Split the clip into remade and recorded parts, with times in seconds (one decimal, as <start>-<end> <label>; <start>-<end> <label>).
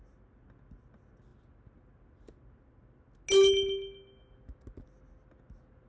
0.0-5.9 recorded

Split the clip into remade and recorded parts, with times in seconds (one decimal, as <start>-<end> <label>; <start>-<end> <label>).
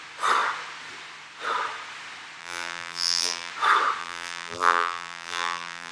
0.0-2.4 recorded; 2.4-3.5 remade; 3.5-4.0 recorded; 4.0-5.9 remade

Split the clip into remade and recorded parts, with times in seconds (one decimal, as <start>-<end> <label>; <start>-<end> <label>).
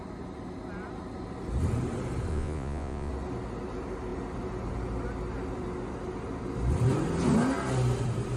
0.0-2.3 recorded; 2.3-3.1 remade; 3.1-8.4 recorded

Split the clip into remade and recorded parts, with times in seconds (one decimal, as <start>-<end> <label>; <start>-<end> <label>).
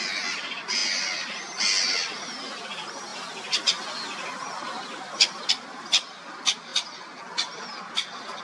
0.0-8.4 recorded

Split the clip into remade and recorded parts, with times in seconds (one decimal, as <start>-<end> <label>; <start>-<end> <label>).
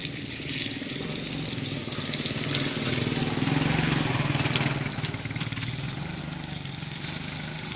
0.0-3.0 remade; 3.0-4.9 recorded; 4.9-6.2 remade; 6.2-7.8 recorded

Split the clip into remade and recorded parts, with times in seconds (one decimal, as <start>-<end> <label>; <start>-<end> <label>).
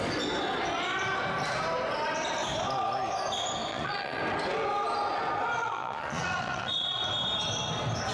0.0-3.7 recorded; 3.7-4.2 remade; 4.2-5.6 recorded; 5.6-7.0 remade; 7.0-8.1 recorded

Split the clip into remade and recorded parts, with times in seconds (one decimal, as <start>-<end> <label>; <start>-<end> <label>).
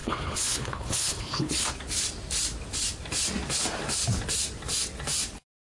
0.0-1.7 remade; 1.7-5.7 recorded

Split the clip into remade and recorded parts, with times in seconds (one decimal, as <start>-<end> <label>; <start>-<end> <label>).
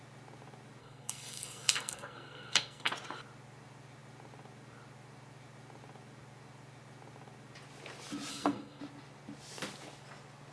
0.0-0.8 recorded; 0.8-2.9 remade; 2.9-8.3 recorded; 8.3-8.8 remade; 8.8-10.5 recorded